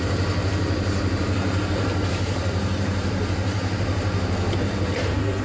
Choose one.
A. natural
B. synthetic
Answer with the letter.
B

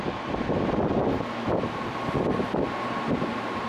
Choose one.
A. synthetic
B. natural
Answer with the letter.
A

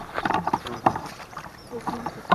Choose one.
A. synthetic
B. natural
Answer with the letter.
A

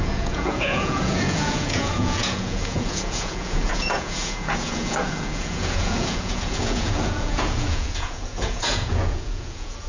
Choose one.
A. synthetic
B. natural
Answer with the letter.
A